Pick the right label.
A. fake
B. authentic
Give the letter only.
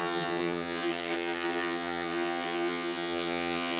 A